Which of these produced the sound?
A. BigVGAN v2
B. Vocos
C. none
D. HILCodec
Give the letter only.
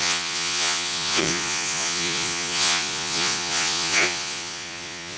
B